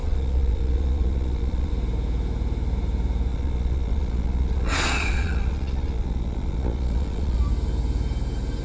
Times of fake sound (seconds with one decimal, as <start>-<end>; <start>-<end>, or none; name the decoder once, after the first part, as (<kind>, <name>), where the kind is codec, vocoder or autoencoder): 0.0-1.7 (vocoder, Vocos); 3.3-7.4